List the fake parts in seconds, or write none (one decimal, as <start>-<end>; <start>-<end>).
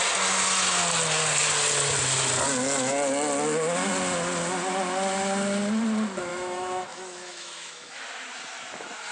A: 6.3-8.0